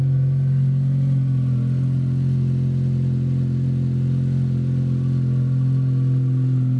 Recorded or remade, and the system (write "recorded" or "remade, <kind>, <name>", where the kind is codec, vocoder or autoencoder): recorded